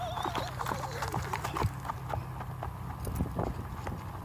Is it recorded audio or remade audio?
recorded